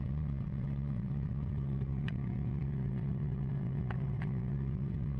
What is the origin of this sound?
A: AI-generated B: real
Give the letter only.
A